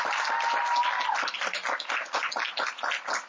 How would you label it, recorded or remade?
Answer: recorded